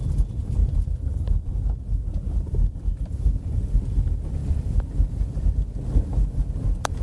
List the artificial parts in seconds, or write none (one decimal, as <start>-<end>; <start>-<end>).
0.6-1.5; 4.4-5.5